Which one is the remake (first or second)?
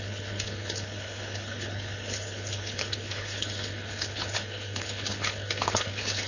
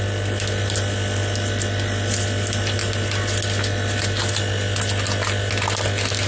first